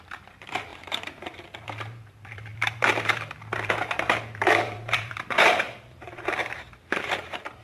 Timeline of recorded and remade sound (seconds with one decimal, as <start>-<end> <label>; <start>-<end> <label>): 0.0-7.6 remade